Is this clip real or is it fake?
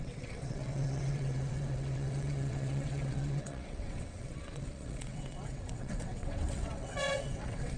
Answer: fake